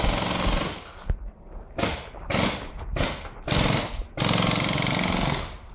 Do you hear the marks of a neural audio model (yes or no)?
no